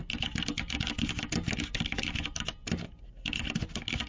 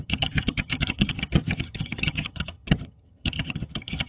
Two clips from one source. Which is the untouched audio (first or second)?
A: first